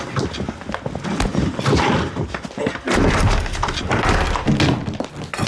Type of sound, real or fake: real